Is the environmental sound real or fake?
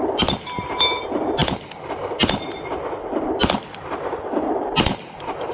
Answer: fake